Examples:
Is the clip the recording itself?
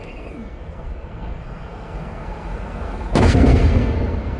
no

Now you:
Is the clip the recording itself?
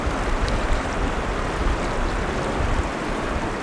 yes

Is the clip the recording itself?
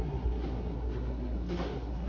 no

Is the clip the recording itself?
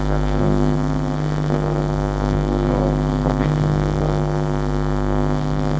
no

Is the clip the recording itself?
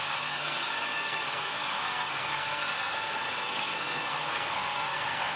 no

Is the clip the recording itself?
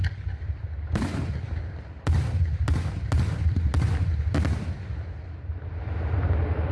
yes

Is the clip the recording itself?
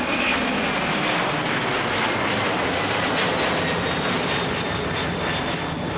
yes